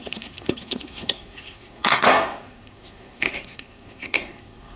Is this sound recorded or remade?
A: remade